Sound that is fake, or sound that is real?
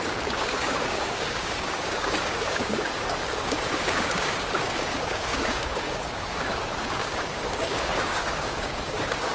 fake